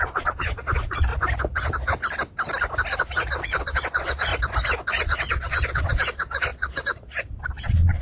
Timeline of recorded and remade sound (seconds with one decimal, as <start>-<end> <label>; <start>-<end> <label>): 0.0-1.1 remade; 1.1-3.0 recorded; 3.0-4.3 remade; 4.3-5.0 recorded; 5.0-8.0 remade

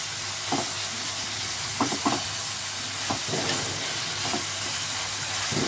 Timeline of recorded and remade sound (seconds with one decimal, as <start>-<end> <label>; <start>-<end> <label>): 0.0-0.9 recorded; 0.9-2.2 remade; 2.2-4.3 recorded; 4.3-5.0 remade; 5.0-5.7 recorded